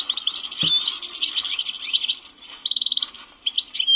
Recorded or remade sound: recorded